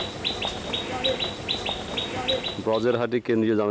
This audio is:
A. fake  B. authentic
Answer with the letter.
B